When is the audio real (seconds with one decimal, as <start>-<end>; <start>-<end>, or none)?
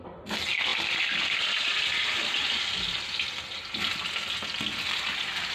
0.0-0.7; 3.3-5.5